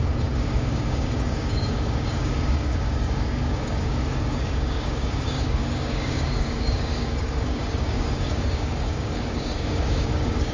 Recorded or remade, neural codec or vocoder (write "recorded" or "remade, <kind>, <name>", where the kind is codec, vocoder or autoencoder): remade, codec, DAC